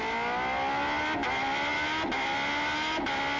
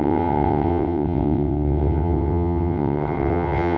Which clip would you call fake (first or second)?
second